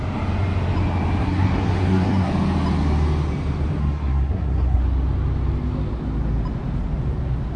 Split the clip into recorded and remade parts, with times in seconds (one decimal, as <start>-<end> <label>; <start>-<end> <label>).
0.0-1.2 recorded; 1.2-2.3 remade; 2.3-3.8 recorded; 3.8-4.8 remade; 4.8-7.6 recorded